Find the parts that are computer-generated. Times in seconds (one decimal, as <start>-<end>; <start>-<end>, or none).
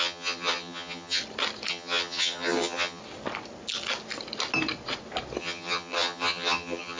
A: 0.0-1.2; 1.7-3.0; 5.4-7.0